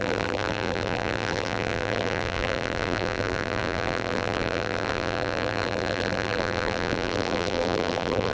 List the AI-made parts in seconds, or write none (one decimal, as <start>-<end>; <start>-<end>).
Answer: 0.0-8.3